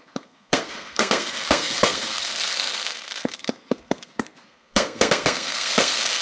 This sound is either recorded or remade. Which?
remade